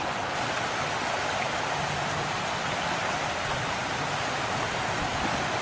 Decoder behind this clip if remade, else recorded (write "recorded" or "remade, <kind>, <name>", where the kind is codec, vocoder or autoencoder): recorded